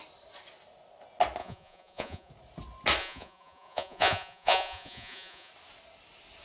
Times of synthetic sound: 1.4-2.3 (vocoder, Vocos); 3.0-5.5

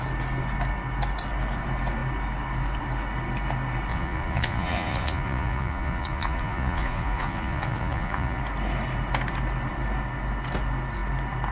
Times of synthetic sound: 3.9-8.4 (vocoder, Vocos)

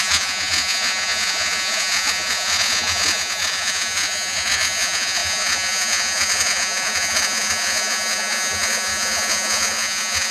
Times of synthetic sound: 0.0-10.3 (vocoder, Vocos)

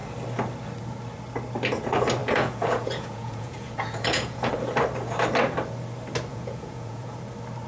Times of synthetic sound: 2.2-4.5 (vocoder, Vocos); 6.3-7.2